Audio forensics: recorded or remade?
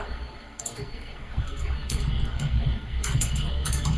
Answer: remade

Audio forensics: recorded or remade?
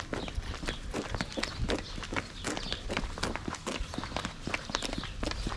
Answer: recorded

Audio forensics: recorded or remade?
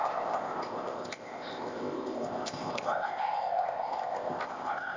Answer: remade